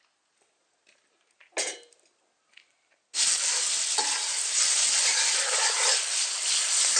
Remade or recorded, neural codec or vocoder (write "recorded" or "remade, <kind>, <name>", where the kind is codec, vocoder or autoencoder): recorded